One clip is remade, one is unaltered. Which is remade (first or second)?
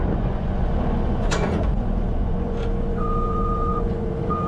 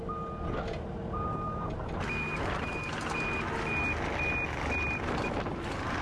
first